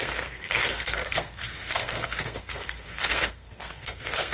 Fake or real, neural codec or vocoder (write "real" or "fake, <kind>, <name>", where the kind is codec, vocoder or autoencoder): fake, codec, SNAC